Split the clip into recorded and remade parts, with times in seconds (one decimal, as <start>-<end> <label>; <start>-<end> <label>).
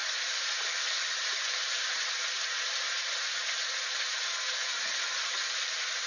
0.0-2.4 remade; 2.4-6.1 recorded